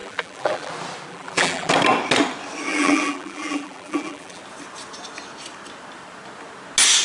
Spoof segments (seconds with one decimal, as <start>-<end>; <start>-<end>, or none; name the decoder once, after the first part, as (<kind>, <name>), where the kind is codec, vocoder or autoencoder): 0.0-0.7 (vocoder, BigVGAN v2); 1.1-1.7; 2.7-4.4